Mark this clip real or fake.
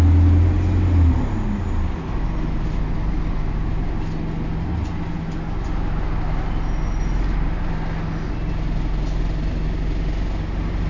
real